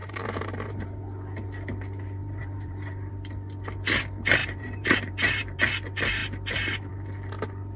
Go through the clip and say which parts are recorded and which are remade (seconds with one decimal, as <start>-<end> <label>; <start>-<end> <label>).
0.0-1.0 remade; 1.0-2.2 recorded; 2.2-3.1 remade; 3.1-4.4 recorded; 4.4-5.6 remade; 5.6-7.8 recorded